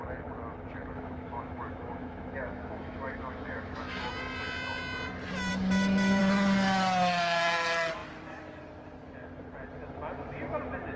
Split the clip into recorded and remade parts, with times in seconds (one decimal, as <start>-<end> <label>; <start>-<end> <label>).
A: 0.0-0.5 recorded; 0.5-4.1 remade; 4.1-5.5 recorded; 5.5-6.2 remade; 6.2-11.0 recorded